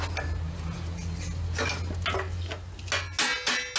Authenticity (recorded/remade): recorded